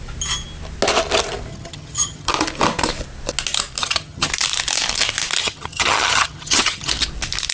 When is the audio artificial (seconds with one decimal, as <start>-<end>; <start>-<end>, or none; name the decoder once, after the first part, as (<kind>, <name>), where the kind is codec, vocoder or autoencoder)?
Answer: 1.5-2.3 (vocoder, HiFi-GAN); 3.8-4.3; 5.4-6.9